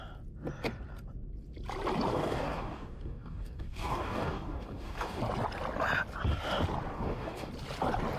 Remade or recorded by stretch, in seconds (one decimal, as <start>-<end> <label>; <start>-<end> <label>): 0.0-2.1 recorded; 2.1-5.2 remade; 5.2-6.9 recorded; 6.9-7.5 remade; 7.5-8.2 recorded